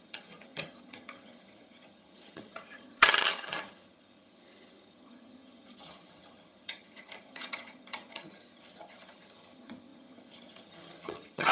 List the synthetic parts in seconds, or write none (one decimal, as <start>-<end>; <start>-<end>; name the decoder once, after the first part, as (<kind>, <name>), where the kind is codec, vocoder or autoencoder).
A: 0.0-11.5 (vocoder, HiFi-GAN)